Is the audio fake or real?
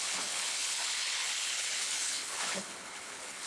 fake